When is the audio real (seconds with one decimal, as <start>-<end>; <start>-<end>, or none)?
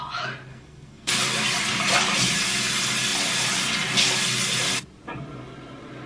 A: 0.0-0.5; 1.2-6.1